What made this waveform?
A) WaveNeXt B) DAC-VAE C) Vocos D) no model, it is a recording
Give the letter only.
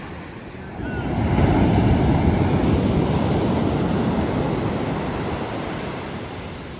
D